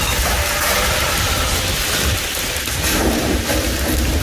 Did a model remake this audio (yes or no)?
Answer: no